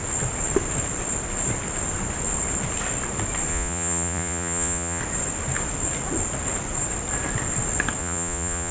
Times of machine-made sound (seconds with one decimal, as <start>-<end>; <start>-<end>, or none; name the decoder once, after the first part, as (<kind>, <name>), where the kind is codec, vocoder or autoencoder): 3.5-5.0 (vocoder, Vocos); 8.0-8.7